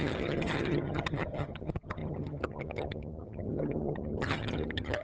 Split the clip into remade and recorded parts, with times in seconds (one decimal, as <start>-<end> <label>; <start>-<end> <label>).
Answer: 0.0-5.0 remade